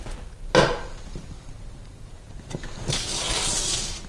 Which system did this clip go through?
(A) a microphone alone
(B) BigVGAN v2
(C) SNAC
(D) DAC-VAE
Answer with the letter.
A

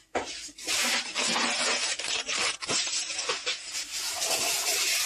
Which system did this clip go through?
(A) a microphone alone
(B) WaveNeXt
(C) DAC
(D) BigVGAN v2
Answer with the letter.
A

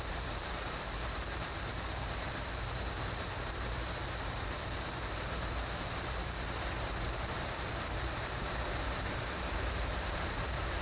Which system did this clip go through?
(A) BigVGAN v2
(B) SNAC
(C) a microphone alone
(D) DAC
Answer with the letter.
A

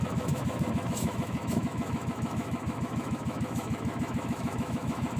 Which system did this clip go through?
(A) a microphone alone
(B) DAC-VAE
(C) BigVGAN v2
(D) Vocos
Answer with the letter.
B